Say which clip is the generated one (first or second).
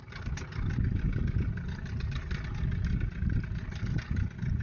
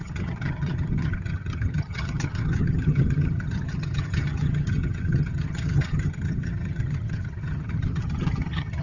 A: second